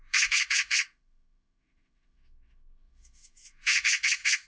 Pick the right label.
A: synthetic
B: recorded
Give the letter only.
A